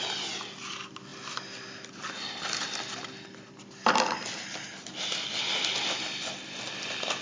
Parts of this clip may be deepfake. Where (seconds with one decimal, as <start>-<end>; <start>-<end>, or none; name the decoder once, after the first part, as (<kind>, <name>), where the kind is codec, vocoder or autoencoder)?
none